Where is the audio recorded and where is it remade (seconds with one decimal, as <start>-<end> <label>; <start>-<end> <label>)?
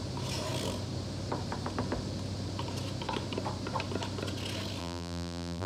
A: 0.0-4.8 recorded; 4.8-5.7 remade